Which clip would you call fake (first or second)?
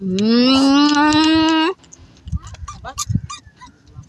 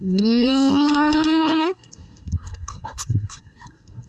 second